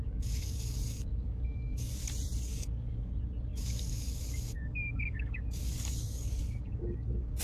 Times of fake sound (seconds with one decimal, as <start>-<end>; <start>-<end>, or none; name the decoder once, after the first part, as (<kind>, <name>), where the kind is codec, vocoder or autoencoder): 0.0-2.0 (codec, DAC); 2.5-3.1; 3.5-7.4